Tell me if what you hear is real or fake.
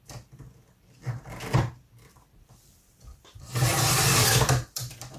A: fake